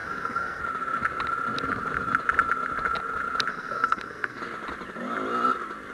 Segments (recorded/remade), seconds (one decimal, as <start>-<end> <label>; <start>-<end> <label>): 0.0-0.6 remade; 0.6-3.5 recorded; 3.5-4.4 remade; 4.4-5.9 recorded